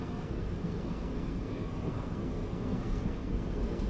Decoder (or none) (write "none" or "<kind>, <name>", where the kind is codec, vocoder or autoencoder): codec, SNAC